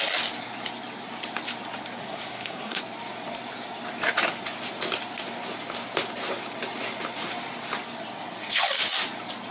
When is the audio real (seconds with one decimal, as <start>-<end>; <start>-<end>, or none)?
0.0-2.0; 2.8-9.5